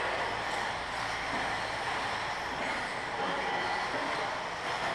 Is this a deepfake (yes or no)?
no